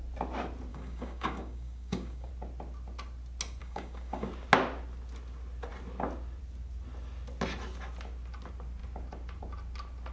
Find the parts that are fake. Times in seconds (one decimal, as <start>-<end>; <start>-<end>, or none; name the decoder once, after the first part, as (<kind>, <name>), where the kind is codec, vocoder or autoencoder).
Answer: 0.7-2.3 (codec, DAC); 3.6-4.3

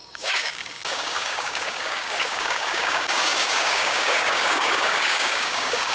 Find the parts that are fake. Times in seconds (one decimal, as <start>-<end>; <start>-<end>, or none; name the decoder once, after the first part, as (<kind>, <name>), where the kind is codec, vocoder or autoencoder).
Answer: 0.0-5.9 (codec, DAC)

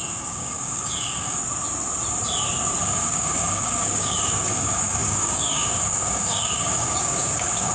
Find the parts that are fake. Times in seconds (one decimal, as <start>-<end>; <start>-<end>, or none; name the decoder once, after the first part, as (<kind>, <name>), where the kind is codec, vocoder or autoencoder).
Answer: 0.0-1.4 (codec, DAC); 2.8-7.7

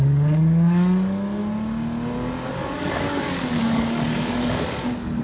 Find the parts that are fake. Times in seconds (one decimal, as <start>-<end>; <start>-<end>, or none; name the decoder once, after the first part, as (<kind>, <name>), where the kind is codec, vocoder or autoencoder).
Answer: 0.0-1.4 (codec, DAC); 2.5-5.2